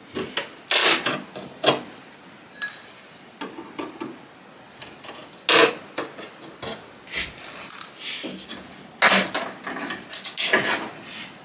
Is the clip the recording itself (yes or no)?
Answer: yes